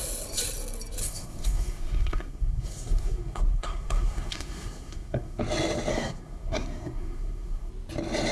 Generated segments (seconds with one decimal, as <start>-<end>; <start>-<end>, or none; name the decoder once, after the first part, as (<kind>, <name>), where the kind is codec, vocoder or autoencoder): 1.0-5.4 (codec, SNAC); 5.9-7.7